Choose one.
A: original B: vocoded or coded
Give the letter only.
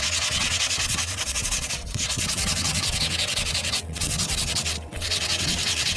B